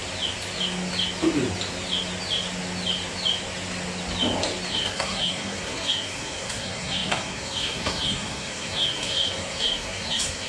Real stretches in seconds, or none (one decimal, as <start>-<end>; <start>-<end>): 0.0-4.7